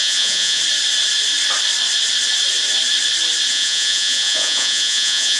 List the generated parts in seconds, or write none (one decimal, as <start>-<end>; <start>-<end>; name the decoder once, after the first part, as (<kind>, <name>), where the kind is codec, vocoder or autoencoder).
0.0-0.6 (vocoder, Vocos); 3.5-5.4